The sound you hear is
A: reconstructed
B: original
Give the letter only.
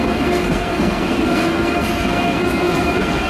A